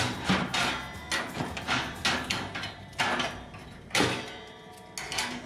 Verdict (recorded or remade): recorded